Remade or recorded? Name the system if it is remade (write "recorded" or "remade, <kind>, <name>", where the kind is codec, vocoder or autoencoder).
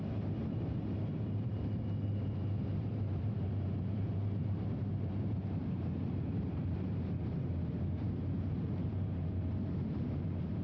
remade, vocoder, BigVGAN v2